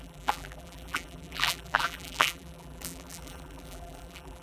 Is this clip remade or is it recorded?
remade